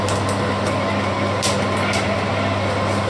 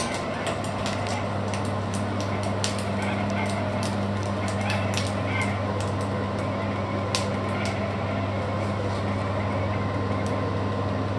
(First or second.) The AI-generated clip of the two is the first